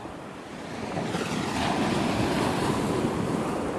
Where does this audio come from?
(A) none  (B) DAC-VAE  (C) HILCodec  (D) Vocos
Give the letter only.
A